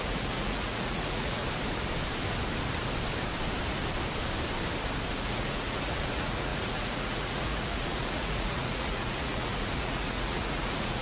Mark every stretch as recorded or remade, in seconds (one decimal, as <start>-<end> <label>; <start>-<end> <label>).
0.0-1.4 remade; 1.4-5.1 recorded; 5.1-11.0 remade